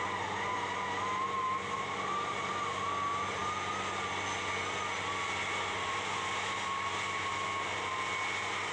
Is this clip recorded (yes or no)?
yes